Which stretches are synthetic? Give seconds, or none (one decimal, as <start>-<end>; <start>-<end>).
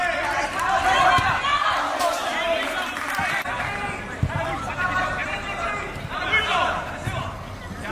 5.2-6.9